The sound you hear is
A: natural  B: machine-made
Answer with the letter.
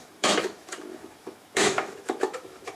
B